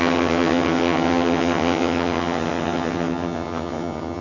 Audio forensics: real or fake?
fake